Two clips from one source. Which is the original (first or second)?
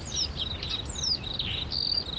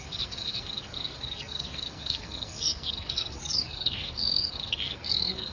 first